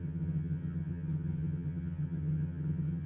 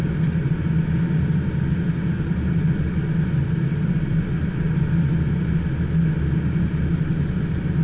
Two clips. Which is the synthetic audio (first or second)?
first